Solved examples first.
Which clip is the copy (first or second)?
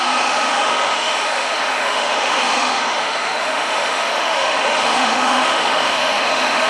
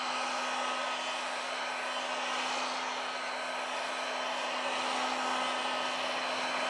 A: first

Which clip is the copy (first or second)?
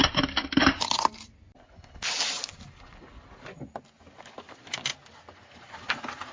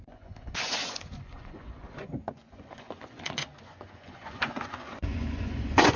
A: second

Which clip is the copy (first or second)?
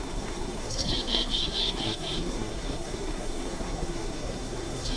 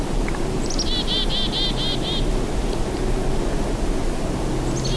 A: first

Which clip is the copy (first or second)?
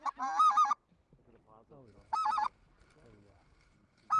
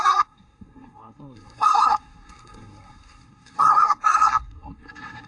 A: second